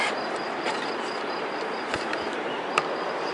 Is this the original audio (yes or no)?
no